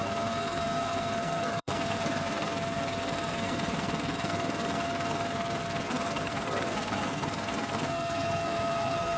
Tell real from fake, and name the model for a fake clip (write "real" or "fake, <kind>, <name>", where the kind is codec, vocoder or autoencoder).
fake, codec, SNAC